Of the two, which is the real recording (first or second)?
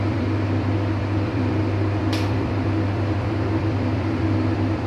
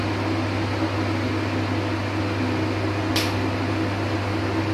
second